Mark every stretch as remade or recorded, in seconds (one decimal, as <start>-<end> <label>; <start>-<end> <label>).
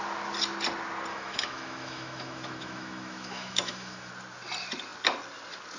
0.0-1.1 recorded; 1.1-4.1 remade; 4.1-5.8 recorded